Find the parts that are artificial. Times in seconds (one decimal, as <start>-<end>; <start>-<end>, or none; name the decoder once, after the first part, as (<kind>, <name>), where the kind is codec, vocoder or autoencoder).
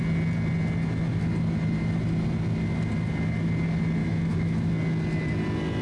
4.0-4.7 (autoencoder, DAC-VAE)